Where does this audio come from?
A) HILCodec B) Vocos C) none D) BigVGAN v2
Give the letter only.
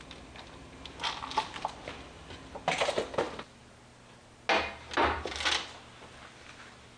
C